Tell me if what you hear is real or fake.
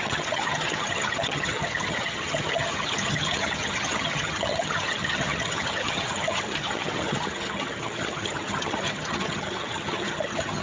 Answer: fake